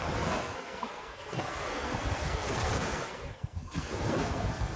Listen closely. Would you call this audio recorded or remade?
remade